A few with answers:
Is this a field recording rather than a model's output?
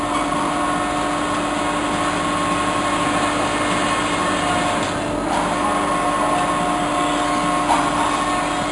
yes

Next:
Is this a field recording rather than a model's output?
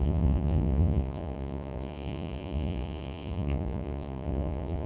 no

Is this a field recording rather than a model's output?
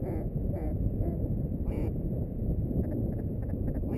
no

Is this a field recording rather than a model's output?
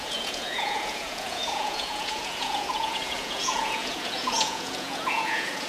no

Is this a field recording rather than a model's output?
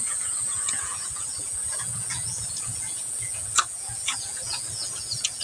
no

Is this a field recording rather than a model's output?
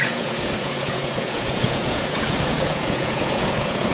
no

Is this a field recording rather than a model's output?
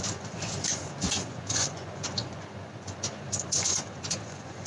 no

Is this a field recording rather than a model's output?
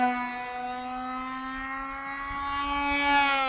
yes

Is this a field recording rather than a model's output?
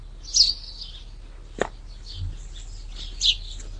yes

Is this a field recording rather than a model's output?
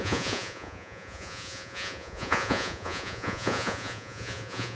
no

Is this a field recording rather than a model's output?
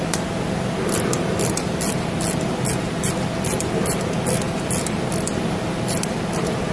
yes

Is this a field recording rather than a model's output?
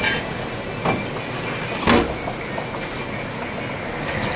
yes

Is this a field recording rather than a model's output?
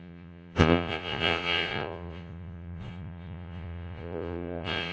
no